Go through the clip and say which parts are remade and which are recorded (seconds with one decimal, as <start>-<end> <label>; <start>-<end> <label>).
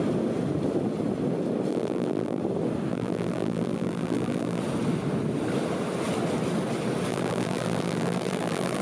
0.0-1.7 recorded; 1.7-2.4 remade; 2.4-2.9 recorded; 2.9-4.6 remade; 4.6-7.1 recorded; 7.1-8.8 remade